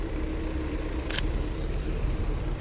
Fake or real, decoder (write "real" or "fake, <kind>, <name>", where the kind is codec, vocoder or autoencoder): fake, vocoder, BigVGAN v2